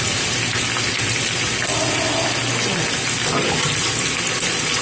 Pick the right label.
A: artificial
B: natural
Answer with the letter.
B